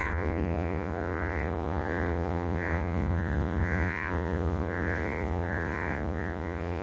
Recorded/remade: remade